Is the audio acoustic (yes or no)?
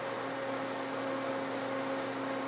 yes